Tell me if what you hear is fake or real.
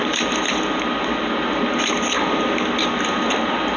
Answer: real